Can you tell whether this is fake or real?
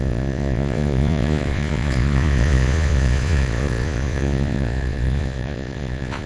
fake